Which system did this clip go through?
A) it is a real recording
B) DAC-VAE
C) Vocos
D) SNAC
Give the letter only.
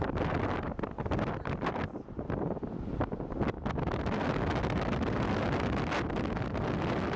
A